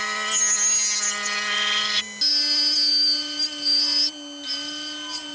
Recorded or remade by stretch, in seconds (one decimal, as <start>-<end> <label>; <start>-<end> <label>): 0.0-5.3 recorded

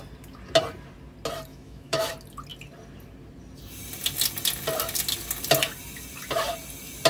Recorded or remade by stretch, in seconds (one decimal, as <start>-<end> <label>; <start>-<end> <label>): 0.0-1.5 recorded; 1.5-2.1 remade; 2.1-7.1 recorded